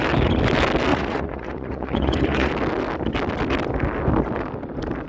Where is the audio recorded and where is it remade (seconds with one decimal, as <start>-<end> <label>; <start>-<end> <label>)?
0.0-0.9 recorded; 0.9-2.5 remade; 2.5-5.1 recorded